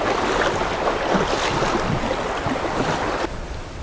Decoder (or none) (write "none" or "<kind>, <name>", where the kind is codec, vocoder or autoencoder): none